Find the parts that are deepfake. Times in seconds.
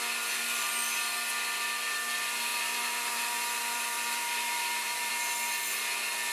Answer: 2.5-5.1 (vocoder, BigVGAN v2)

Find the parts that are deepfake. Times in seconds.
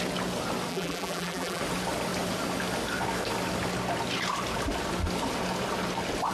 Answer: 0.7-1.6 (vocoder, BigVGAN v2)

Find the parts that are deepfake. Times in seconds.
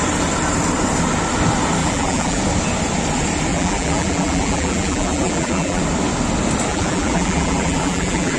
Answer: 1.8-2.4 (vocoder, BigVGAN v2); 3.5-5.8; 6.7-8.4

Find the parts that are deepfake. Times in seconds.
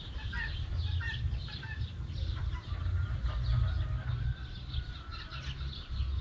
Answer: 2.2-3.2 (vocoder, BigVGAN v2); 4.1-5.1